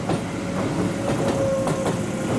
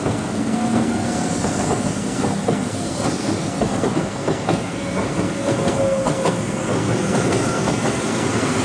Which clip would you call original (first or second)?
first